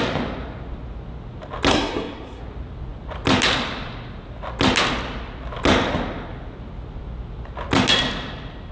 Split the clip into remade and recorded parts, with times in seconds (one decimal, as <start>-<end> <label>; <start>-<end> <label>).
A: 0.0-1.7 recorded; 1.7-2.4 remade; 2.4-8.7 recorded